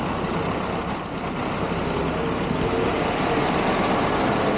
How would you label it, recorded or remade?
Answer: recorded